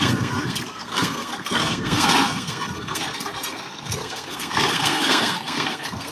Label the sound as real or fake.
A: fake